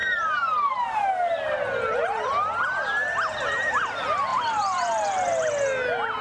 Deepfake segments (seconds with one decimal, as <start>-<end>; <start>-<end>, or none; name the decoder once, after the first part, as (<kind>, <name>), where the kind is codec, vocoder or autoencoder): 4.3-5.5 (vocoder, BigVGAN v2)